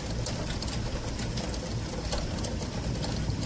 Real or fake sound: real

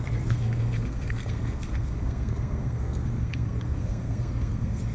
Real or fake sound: fake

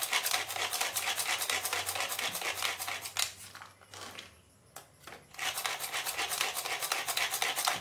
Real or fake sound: real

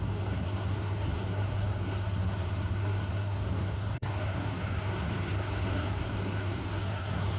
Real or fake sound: fake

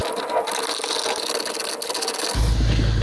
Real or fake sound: real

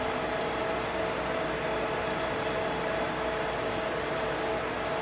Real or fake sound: real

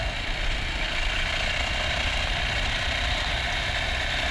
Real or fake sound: real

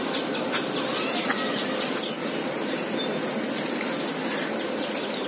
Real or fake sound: real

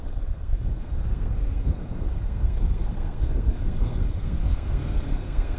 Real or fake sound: fake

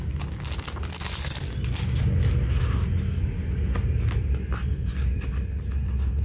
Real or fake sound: real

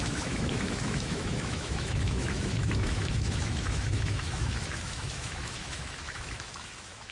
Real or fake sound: fake